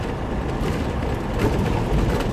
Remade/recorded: recorded